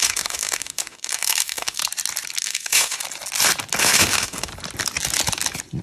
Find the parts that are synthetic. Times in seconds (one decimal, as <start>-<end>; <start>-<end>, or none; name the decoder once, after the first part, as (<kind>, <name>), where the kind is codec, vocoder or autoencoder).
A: 0.0-1.8 (autoencoder, DAC-VAE); 2.4-3.0; 3.8-4.5